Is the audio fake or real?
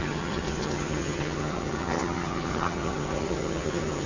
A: fake